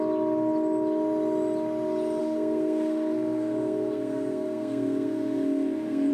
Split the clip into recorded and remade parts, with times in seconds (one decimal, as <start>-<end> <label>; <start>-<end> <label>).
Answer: 0.0-2.2 recorded; 2.2-6.1 remade